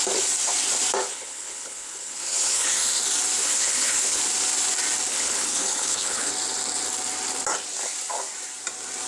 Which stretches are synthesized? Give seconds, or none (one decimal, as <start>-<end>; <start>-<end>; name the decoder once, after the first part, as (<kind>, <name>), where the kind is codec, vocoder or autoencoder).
1.1-3.0 (codec, HILCodec); 3.4-4.2; 5.1-6.3